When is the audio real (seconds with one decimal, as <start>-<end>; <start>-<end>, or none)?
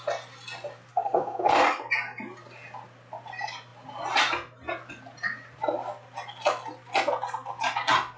0.0-0.9; 1.5-8.2